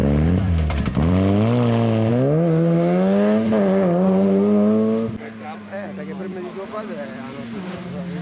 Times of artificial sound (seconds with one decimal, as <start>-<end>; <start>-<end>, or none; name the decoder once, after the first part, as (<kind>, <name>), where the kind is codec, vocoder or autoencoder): 0.0-2.1 (vocoder, BigVGAN v2); 6.2-7.2